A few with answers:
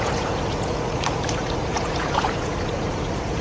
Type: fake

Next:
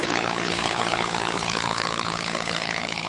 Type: fake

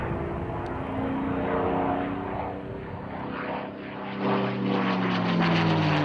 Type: real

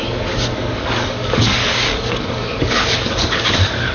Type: fake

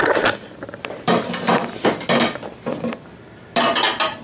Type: real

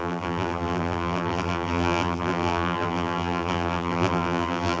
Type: fake